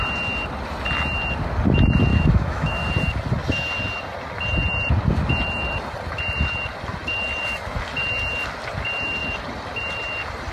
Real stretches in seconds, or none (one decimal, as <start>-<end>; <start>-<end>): 0.0-2.1; 2.9-10.5